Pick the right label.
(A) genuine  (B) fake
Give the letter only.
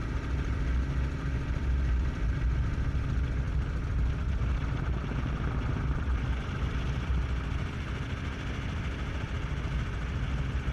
A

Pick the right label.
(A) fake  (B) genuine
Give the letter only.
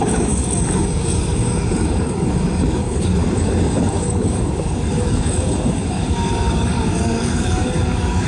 A